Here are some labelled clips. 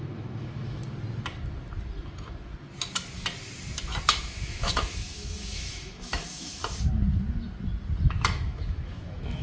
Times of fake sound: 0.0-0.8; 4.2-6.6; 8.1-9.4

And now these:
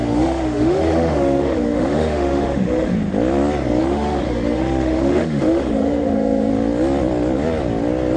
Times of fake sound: 0.0-2.9; 3.8-6.5

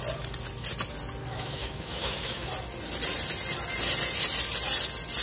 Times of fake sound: 1.3-2.5

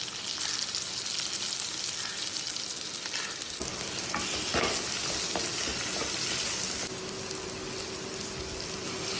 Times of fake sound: none